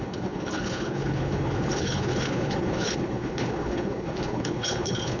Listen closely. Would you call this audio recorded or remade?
remade